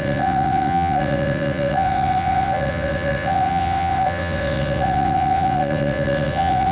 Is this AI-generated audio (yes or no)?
yes